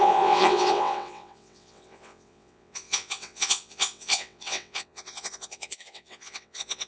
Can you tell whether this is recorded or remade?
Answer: remade